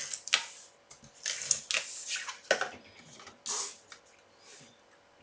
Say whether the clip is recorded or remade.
recorded